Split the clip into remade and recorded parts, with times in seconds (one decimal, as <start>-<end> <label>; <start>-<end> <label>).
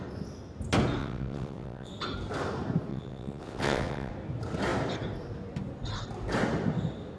0.0-1.0 recorded; 1.0-1.9 remade; 1.9-2.9 recorded; 2.9-4.1 remade; 4.1-7.2 recorded